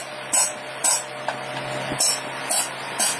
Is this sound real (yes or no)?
yes